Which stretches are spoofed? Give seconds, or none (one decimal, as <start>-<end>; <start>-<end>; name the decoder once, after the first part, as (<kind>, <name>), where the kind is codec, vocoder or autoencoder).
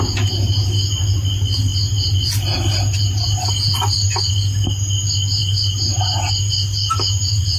none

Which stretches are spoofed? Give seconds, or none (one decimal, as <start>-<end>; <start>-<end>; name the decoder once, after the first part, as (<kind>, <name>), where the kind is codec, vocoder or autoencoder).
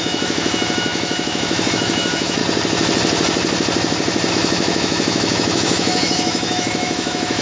0.0-2.4 (autoencoder, DAC-VAE); 4.3-7.4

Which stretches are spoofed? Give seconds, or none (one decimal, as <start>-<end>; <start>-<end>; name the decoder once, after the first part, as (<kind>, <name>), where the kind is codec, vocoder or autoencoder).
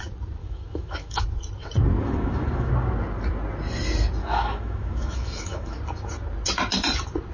0.4-1.2 (autoencoder, DAC-VAE); 2.0-2.7; 4.2-5.8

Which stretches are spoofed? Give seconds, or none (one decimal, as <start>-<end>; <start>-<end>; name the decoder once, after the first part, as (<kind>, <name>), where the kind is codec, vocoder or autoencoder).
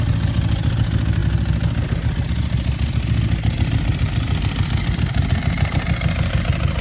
none